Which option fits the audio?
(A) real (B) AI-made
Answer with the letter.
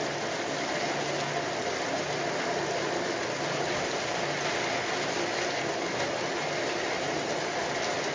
A